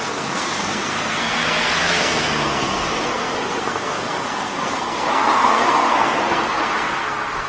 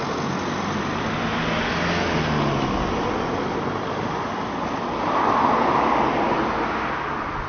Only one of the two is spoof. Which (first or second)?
first